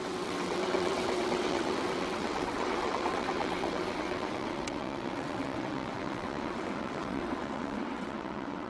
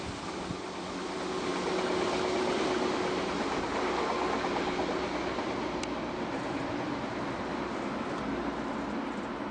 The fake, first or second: first